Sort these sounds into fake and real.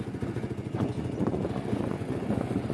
fake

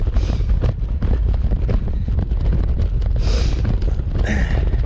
real